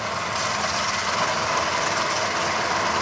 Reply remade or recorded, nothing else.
recorded